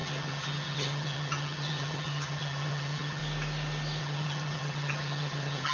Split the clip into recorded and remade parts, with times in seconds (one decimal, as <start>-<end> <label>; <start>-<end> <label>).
0.0-3.2 remade; 3.2-4.0 recorded; 4.0-5.7 remade